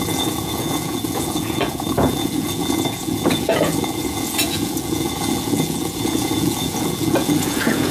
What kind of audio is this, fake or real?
fake